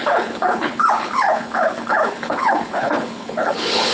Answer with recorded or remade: remade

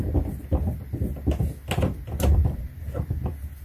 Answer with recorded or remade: recorded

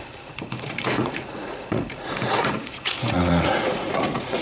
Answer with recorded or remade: remade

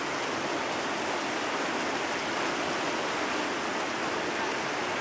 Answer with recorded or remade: recorded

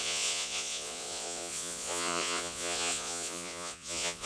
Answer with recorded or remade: remade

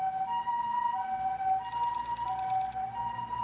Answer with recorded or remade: recorded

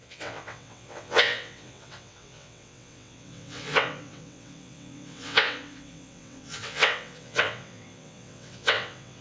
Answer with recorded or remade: remade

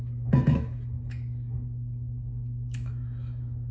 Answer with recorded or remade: remade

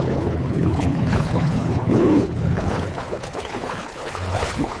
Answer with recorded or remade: remade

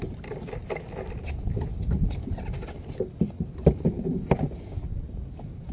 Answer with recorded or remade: recorded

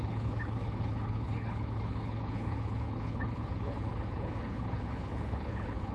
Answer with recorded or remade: remade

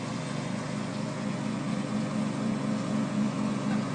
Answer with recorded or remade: remade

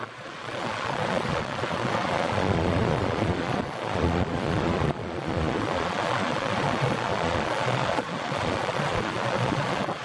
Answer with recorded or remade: remade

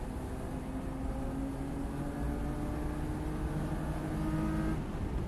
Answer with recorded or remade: recorded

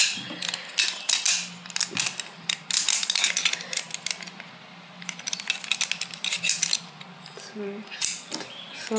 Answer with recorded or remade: recorded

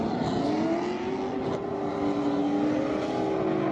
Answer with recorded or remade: recorded